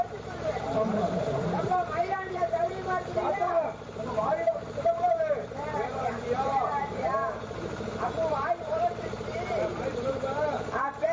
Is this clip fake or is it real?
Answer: fake